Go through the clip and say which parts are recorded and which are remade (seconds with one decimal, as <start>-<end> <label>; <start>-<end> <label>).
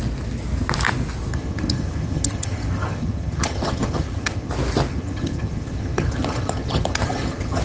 0.0-1.3 recorded; 1.3-4.5 remade; 4.5-4.9 recorded; 4.9-7.6 remade